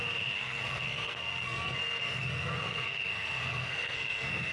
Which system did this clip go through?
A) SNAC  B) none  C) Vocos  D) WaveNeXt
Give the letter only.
A